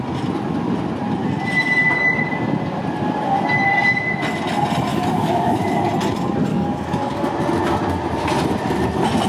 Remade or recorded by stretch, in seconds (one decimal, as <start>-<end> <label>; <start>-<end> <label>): 0.0-4.9 recorded; 4.9-5.6 remade; 5.6-6.5 recorded; 6.5-7.3 remade; 7.3-9.3 recorded